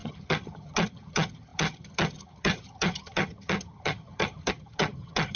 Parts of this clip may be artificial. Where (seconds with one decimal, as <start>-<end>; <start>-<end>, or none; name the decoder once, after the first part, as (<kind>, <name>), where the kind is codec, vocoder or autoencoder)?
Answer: 0.0-5.4 (vocoder, HiFi-GAN)